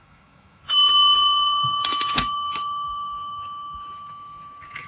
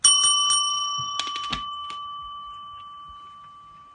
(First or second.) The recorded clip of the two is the second